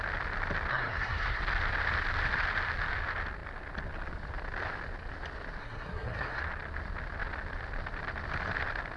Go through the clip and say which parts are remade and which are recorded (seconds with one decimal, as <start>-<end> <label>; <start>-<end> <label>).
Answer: 0.0-0.7 recorded; 0.7-1.4 remade; 1.4-5.6 recorded; 5.6-6.4 remade; 6.4-9.0 recorded